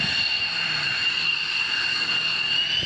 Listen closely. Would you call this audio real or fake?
real